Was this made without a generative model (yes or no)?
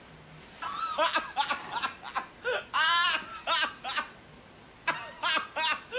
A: yes